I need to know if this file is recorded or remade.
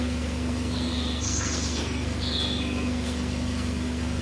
remade